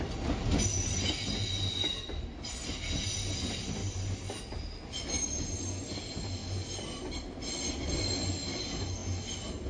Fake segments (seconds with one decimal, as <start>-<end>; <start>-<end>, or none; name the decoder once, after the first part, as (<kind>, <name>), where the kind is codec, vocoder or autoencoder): 3.8-4.4 (vocoder, BigVGAN v2)